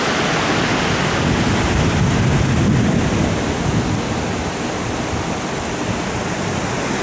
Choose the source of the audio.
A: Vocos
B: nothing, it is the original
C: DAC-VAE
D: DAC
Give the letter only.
B